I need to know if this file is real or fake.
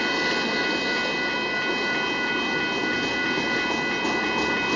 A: real